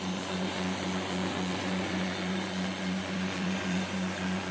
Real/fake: fake